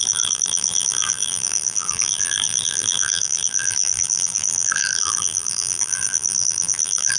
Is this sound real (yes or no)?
no